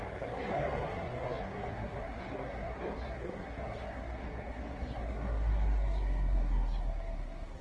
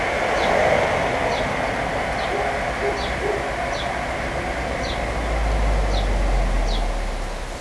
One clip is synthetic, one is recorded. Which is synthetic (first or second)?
first